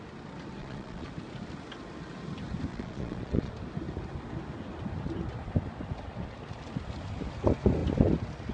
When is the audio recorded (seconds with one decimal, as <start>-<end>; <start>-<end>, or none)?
0.0-0.6; 1.1-2.7; 3.5-8.5